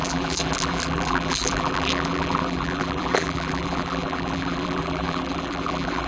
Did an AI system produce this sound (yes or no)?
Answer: yes